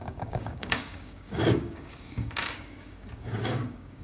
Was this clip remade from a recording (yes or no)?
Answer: yes